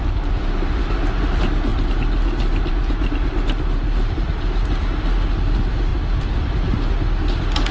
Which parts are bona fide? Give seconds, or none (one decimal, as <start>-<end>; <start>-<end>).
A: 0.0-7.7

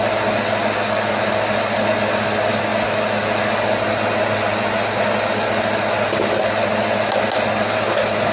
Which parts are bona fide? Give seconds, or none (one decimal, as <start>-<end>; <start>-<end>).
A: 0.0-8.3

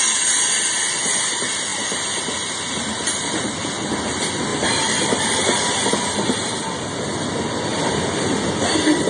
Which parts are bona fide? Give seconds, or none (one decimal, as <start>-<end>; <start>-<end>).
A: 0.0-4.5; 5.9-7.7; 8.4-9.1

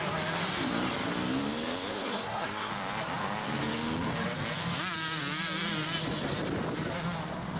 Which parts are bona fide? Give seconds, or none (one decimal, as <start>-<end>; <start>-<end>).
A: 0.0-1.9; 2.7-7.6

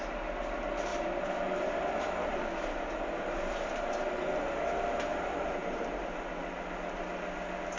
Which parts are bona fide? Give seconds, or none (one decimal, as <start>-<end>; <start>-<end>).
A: 0.0-0.9; 4.3-5.1; 6.0-7.8

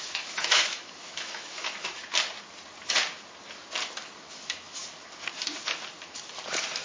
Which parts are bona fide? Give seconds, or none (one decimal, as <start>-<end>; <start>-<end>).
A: 2.0-4.3; 4.8-6.8